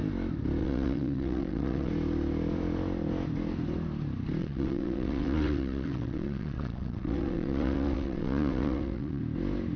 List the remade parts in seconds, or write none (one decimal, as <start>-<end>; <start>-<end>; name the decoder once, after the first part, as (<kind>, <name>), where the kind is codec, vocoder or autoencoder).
0.6-1.9 (vocoder, WaveNeXt); 4.4-9.2